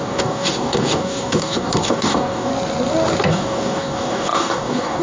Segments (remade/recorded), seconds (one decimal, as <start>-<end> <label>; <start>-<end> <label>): 0.0-2.5 remade; 2.5-3.3 recorded; 3.3-5.0 remade